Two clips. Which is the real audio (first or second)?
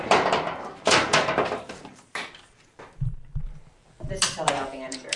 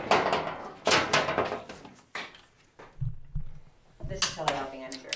second